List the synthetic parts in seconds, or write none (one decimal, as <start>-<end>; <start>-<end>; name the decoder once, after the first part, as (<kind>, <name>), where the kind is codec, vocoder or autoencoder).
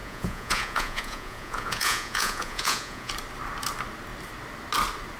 0.0-3.1 (vocoder, Vocos)